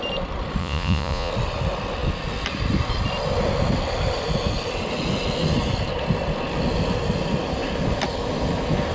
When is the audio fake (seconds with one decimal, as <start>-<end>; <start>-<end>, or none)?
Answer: 0.6-1.3

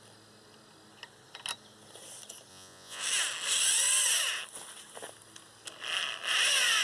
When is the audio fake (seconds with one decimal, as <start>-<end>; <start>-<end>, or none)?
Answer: 2.5-3.0

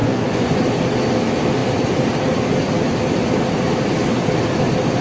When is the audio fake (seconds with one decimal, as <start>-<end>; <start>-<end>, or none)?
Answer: 0.0-0.6

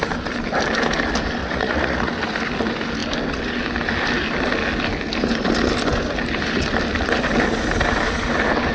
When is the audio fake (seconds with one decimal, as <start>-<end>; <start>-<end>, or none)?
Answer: 1.4-2.1